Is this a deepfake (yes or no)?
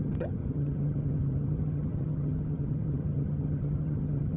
yes